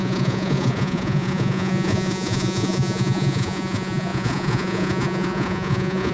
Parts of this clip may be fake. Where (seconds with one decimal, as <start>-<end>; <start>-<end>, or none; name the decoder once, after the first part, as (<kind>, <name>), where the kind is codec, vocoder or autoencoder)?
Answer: 0.0-6.1 (vocoder, Vocos)